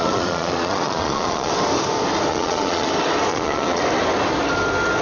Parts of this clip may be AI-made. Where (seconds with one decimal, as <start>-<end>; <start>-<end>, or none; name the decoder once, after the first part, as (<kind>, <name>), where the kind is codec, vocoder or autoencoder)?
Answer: 0.0-1.5 (vocoder, Vocos); 2.3-2.9; 3.3-3.8